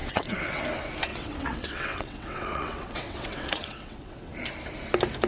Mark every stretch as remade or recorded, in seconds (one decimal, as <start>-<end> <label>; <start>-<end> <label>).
0.0-0.6 remade; 0.6-1.1 recorded; 1.1-4.3 remade; 4.3-5.3 recorded